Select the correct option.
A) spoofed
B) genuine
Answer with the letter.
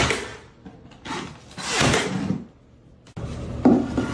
B